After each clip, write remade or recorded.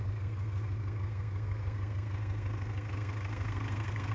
remade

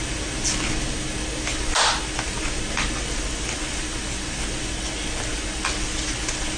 recorded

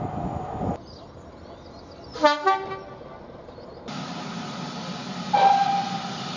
recorded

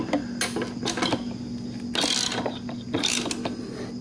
recorded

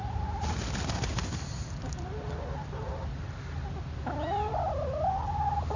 recorded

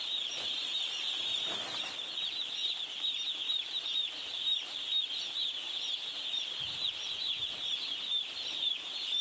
remade